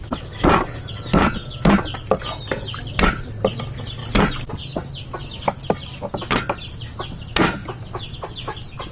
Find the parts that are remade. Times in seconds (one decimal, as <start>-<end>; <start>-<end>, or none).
none